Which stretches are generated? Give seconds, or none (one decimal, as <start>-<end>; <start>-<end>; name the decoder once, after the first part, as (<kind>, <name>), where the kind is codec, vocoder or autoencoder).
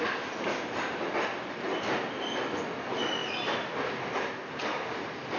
3.2-3.8 (vocoder, BigVGAN v2)